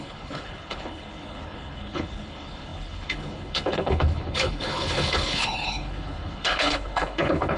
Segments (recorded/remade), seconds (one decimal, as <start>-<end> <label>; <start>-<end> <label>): 0.0-7.6 remade